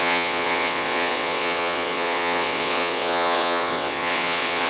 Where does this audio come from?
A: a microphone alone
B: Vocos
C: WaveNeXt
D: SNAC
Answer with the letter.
C